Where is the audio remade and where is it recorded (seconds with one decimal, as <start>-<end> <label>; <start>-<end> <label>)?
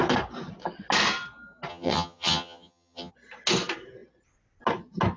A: 0.0-1.7 recorded; 1.7-3.1 remade; 3.1-5.2 recorded